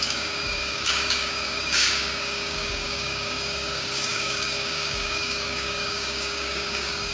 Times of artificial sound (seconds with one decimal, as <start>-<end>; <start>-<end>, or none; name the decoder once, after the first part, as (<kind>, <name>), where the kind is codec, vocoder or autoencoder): 0.0-7.1 (codec, DAC)